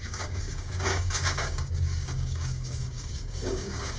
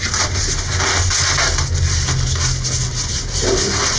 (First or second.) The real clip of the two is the second